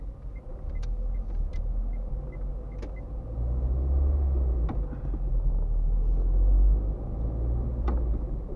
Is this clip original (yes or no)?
yes